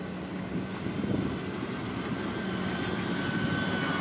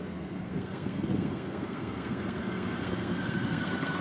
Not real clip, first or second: second